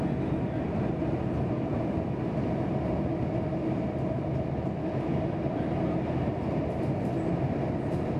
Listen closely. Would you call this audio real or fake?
real